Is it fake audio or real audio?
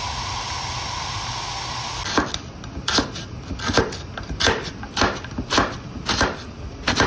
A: real